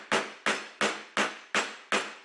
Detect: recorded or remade recorded